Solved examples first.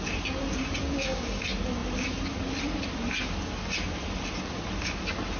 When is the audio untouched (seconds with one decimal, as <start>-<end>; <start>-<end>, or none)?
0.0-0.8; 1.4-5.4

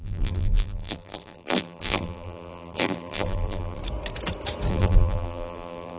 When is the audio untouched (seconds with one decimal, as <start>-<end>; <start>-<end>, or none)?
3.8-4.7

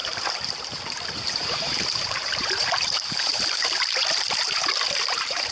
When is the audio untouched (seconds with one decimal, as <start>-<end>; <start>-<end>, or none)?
none

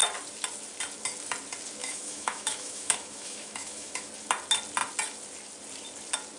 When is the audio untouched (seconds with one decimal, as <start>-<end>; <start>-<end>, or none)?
0.0-1.8; 4.1-6.4

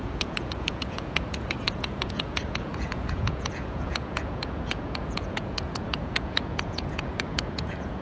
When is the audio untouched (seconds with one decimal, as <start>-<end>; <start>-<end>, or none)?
none

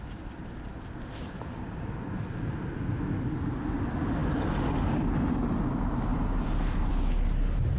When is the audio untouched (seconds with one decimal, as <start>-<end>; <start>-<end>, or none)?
0.0-6.1; 6.9-7.8